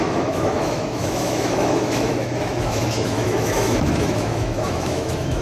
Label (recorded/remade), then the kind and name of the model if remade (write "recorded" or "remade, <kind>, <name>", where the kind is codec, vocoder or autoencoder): remade, autoencoder, DAC-VAE